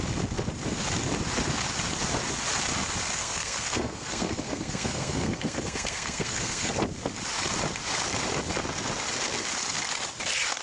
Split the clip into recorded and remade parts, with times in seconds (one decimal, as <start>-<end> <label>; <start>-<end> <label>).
0.0-3.2 recorded; 3.2-6.7 remade; 6.7-10.6 recorded